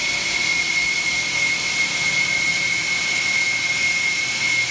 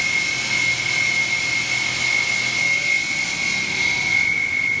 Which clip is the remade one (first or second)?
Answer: first